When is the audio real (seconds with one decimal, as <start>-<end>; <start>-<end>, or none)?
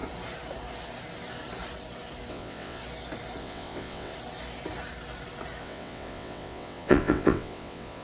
0.0-2.3; 2.8-3.4; 4.1-5.6